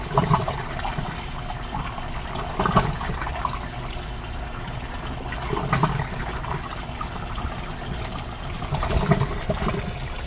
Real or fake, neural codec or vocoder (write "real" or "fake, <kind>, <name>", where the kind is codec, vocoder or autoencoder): real